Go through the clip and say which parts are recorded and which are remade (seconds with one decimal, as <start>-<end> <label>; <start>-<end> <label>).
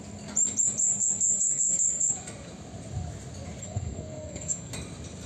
0.0-0.8 recorded; 0.8-2.1 remade; 2.1-3.6 recorded; 3.6-4.7 remade; 4.7-5.3 recorded